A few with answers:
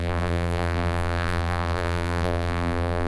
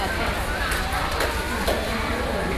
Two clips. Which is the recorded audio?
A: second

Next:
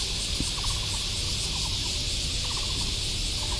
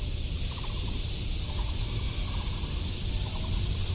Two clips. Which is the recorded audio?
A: first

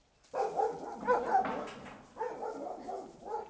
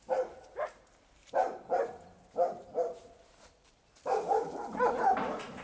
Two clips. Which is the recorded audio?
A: first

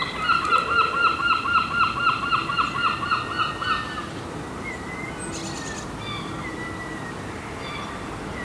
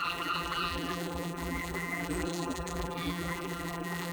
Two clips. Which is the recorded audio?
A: first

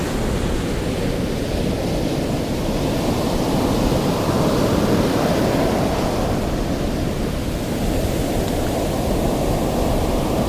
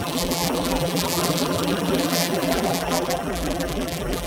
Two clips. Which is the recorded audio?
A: first